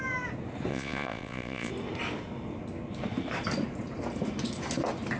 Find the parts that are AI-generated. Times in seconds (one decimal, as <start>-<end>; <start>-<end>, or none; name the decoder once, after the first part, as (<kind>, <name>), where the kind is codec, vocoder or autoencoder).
0.7-1.7 (vocoder, Vocos)